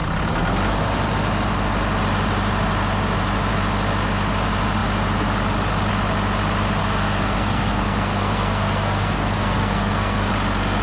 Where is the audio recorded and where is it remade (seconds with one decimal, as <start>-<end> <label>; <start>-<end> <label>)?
0.0-6.8 recorded; 6.8-10.3 remade; 10.3-10.8 recorded